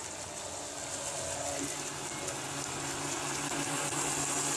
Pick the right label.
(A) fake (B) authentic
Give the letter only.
B